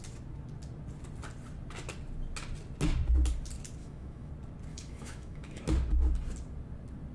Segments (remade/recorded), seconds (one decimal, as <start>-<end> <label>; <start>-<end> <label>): 0.0-3.8 recorded; 3.8-4.3 remade; 4.3-4.7 recorded; 4.7-5.6 remade; 5.6-7.1 recorded